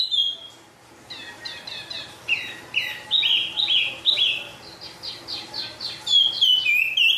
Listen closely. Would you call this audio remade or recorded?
recorded